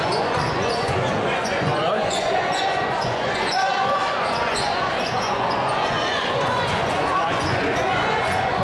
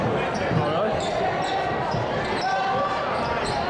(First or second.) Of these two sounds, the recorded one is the second